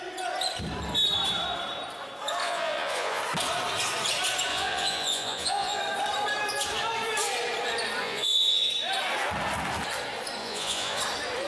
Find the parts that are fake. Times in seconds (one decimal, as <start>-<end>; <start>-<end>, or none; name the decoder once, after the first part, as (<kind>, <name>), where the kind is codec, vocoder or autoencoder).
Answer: 2.4-3.2 (vocoder, Vocos); 4.5-5.8; 8.0-8.7; 10.4-11.0